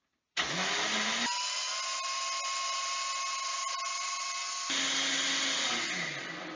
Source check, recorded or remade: recorded